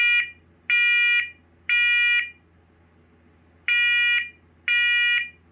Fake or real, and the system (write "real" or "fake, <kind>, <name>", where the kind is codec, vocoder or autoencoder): real